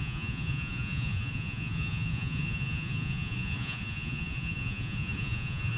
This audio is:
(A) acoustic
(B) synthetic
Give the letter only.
B